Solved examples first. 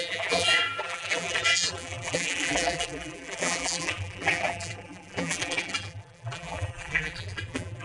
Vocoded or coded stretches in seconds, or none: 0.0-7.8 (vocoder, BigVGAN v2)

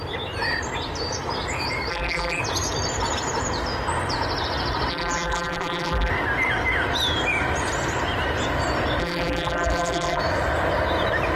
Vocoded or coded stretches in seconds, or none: 1.9-2.4 (vocoder, BigVGAN v2); 4.9-6.1; 9.0-10.2